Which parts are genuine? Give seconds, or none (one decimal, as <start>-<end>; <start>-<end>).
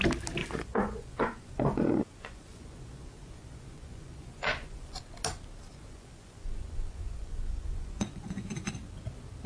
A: 0.0-0.4; 5.0-5.7; 8.7-9.5